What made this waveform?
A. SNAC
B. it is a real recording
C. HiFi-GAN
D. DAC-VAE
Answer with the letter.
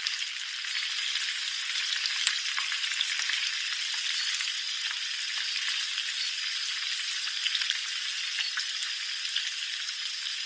B